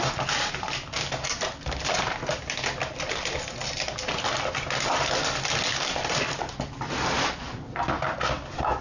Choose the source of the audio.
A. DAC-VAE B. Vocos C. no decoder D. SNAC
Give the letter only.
C